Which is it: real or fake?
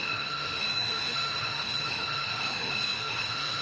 fake